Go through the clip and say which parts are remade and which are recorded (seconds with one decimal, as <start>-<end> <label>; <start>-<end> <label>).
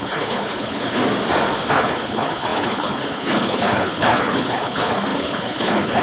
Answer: 0.0-1.0 remade; 1.0-1.7 recorded; 1.7-6.0 remade